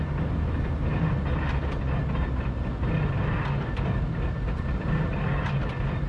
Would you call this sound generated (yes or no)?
no